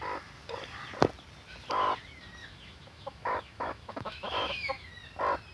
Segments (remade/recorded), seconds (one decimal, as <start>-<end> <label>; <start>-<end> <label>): 0.0-2.4 recorded; 2.4-4.9 remade; 4.9-5.5 recorded